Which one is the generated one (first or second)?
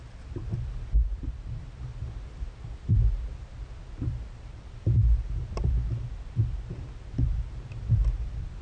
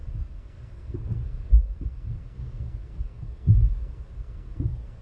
second